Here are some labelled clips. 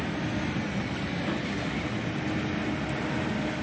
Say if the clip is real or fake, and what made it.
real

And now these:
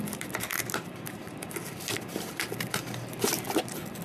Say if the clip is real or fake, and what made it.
real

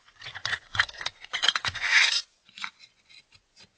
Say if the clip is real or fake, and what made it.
fake, vocoder, Vocos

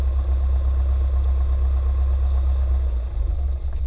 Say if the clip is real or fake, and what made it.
real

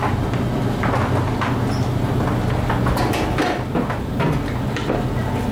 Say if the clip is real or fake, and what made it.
real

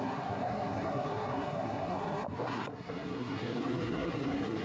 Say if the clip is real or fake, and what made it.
fake, codec, SNAC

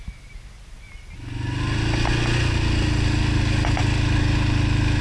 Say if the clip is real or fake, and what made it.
real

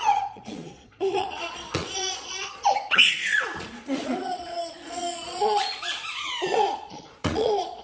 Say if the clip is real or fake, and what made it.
fake, vocoder, Vocos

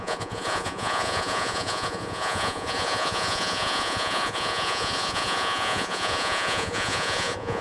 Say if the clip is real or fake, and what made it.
fake, vocoder, Vocos